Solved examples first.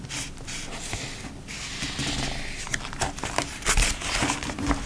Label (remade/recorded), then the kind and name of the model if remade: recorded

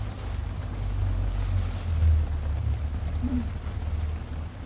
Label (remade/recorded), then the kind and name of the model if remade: recorded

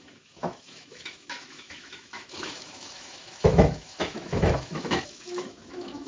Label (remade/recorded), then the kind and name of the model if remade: remade, autoencoder, DAC-VAE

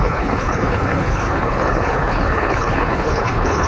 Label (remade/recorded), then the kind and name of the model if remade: remade, codec, HILCodec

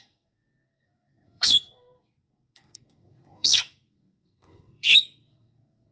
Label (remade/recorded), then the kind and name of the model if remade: remade, codec, SNAC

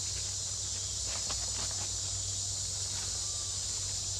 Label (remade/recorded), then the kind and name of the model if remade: recorded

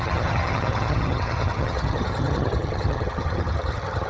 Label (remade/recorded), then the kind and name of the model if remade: remade, vocoder, HiFi-GAN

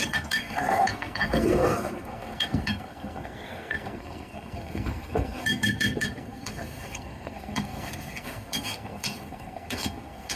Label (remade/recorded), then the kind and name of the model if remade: remade, codec, SNAC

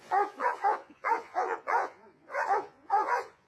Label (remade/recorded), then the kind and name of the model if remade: remade, vocoder, Vocos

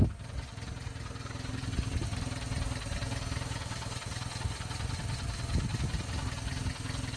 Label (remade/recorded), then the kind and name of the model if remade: recorded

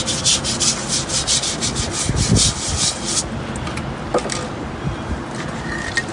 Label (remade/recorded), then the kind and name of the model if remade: recorded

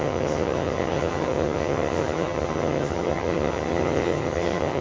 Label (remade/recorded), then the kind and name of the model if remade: remade, vocoder, HiFi-GAN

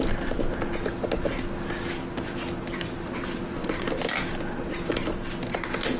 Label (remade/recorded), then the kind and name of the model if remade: recorded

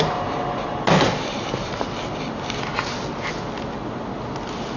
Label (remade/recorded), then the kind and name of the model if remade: recorded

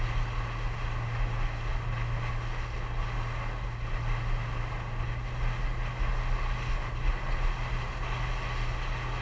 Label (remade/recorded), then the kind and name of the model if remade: recorded